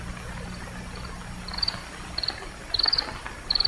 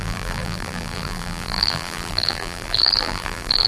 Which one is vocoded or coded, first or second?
second